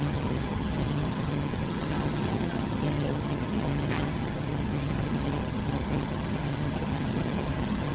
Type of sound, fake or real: fake